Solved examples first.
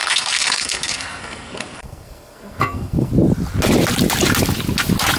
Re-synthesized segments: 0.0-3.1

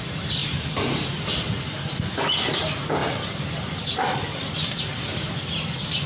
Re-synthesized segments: 0.4-0.9; 3.0-4.8

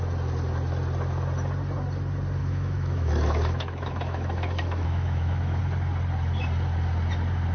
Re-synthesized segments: 2.4-5.6

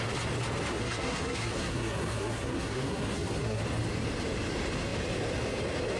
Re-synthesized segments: 0.7-3.6